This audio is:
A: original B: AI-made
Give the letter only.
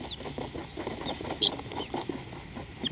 B